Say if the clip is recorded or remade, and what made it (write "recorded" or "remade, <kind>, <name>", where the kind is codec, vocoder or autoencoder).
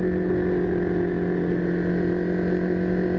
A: recorded